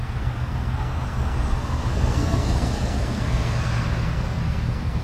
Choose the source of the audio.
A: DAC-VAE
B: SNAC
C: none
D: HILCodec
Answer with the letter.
B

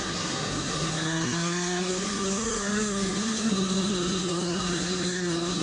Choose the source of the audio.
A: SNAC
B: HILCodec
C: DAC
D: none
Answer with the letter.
A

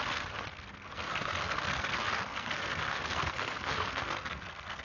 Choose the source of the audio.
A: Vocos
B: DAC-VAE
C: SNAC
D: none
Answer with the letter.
C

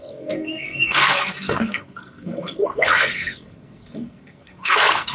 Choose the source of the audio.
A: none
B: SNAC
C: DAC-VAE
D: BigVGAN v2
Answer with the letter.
B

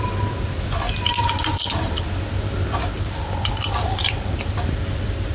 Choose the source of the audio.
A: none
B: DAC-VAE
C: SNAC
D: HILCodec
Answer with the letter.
A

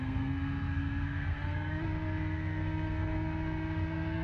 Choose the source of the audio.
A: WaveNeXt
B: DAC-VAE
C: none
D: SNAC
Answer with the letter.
D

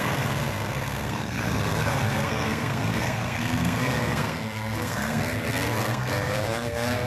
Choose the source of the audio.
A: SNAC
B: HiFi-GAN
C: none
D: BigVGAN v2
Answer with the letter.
A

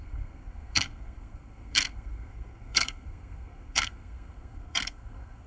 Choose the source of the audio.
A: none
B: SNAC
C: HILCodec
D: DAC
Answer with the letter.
B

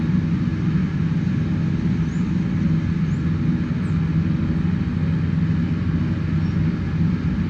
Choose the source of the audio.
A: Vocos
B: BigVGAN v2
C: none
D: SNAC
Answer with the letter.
C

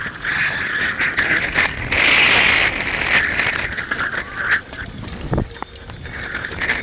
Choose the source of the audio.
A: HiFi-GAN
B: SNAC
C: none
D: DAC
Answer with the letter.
C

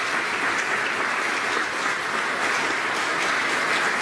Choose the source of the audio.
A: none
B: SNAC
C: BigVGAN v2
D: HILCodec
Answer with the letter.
A